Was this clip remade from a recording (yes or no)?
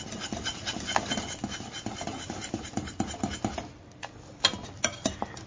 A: no